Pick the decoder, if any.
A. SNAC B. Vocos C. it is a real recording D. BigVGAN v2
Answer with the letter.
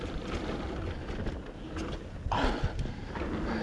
C